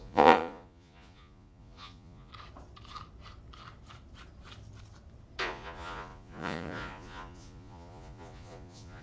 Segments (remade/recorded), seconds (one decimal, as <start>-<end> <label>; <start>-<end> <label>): 0.0-2.3 remade; 2.3-5.4 recorded; 5.4-9.0 remade